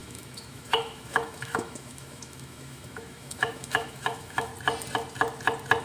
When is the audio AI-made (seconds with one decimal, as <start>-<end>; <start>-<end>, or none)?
0.0-4.5